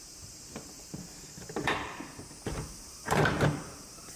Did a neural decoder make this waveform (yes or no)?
yes